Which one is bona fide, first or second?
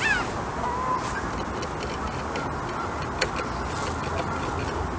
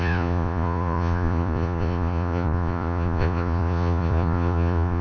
first